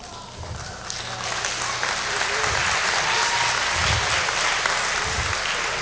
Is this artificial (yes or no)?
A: no